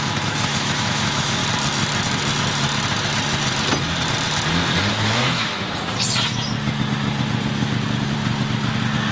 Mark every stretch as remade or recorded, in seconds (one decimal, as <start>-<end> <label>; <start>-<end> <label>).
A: 0.0-1.4 remade; 1.4-4.9 recorded; 4.9-5.5 remade; 5.5-9.1 recorded